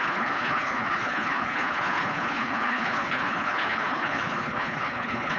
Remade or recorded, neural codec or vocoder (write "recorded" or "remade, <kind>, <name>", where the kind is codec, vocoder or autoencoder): remade, codec, HILCodec